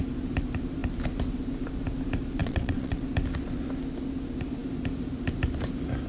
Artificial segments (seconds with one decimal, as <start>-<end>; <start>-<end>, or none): 2.4-3.0